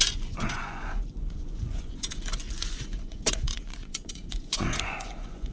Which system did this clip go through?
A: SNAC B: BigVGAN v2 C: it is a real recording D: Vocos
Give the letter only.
D